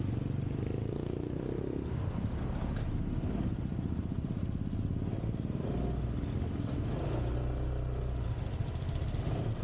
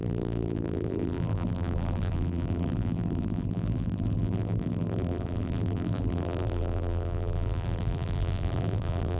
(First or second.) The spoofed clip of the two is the second